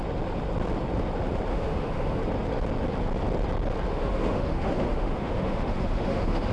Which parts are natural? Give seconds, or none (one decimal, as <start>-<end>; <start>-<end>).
0.0-1.5; 2.2-3.9